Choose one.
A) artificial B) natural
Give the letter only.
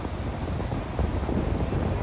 B